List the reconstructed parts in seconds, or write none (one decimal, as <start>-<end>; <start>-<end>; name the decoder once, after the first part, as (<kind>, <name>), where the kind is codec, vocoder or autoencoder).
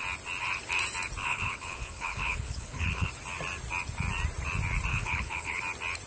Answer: 1.2-3.1 (codec, HILCodec); 4.9-5.6